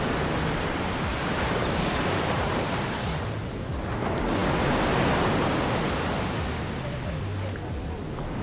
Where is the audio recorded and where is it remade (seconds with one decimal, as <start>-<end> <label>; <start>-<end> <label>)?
0.0-1.1 recorded; 1.1-2.8 remade; 2.8-8.4 recorded